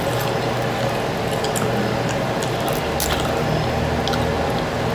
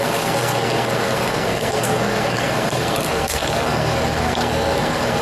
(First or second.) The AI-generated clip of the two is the second